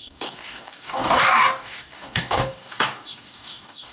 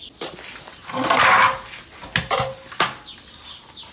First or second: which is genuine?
second